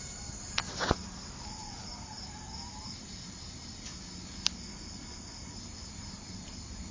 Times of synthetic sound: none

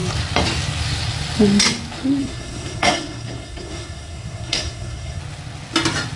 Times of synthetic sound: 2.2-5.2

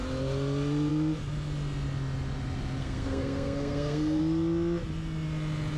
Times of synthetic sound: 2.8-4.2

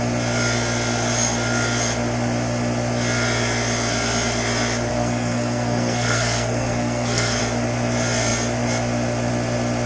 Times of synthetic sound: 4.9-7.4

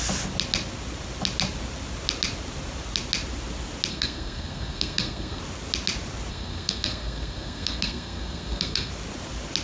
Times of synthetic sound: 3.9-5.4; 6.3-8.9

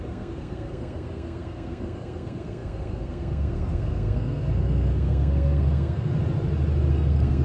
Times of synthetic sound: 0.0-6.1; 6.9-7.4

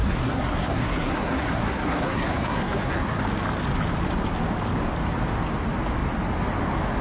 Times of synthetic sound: 0.0-3.2